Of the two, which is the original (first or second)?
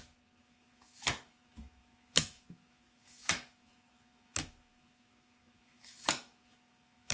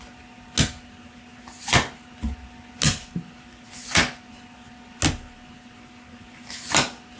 second